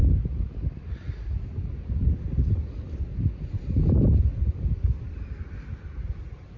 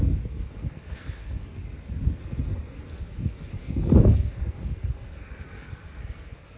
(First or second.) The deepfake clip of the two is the second